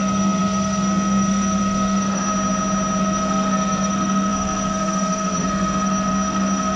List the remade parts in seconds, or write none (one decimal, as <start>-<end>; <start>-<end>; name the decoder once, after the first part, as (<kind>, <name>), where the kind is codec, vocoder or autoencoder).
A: 0.0-2.3 (codec, SNAC); 3.0-6.8